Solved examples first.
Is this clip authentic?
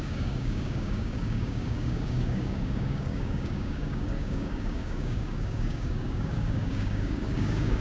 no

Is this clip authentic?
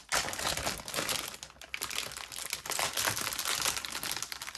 yes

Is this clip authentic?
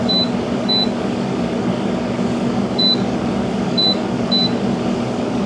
no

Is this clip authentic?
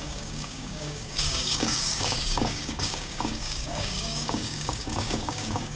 no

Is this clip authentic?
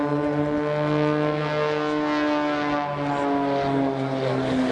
yes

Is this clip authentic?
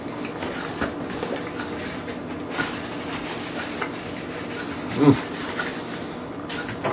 yes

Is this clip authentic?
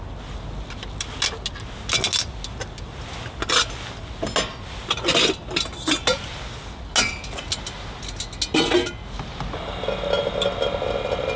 yes